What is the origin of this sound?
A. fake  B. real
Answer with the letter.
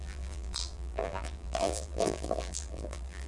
A